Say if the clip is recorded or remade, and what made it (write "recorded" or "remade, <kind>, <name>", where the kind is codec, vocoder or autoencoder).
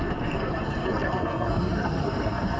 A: remade, codec, SNAC